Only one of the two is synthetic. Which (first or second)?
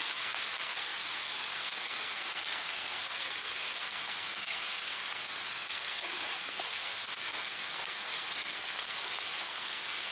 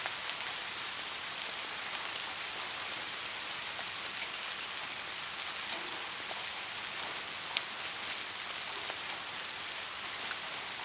first